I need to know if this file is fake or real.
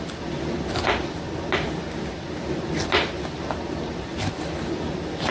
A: real